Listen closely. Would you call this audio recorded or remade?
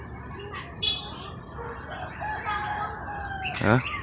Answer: recorded